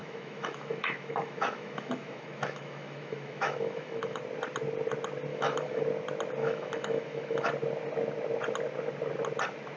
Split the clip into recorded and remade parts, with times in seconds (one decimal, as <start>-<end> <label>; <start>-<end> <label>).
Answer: 0.0-4.2 remade; 4.2-5.3 recorded; 5.3-5.8 remade; 5.8-6.4 recorded; 6.4-7.5 remade; 7.5-9.8 recorded